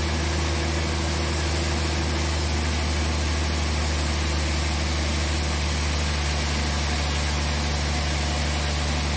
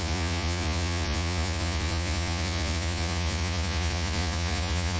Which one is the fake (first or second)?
second